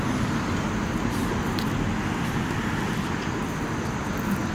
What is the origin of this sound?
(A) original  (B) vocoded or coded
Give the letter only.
A